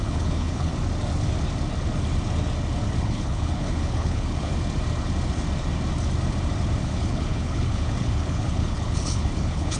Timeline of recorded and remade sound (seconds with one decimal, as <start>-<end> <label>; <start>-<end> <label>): 0.0-0.7 remade; 0.7-3.0 recorded; 3.0-4.5 remade; 4.5-6.8 recorded; 6.8-9.8 remade